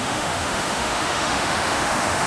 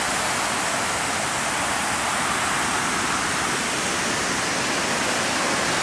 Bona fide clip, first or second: second